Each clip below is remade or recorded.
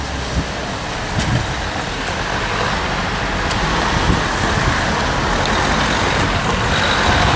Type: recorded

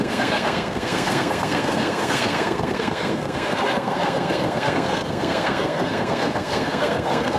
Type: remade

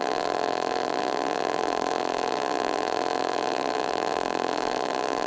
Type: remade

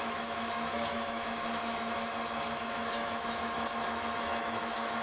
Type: remade